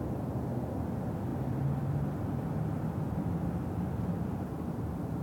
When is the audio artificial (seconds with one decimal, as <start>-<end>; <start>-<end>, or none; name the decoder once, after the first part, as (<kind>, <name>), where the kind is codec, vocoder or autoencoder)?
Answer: none